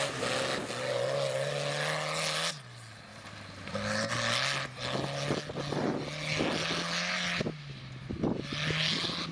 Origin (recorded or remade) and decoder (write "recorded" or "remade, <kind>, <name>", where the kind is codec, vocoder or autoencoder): recorded